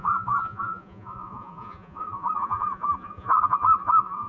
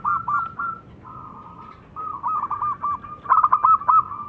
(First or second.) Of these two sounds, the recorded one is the second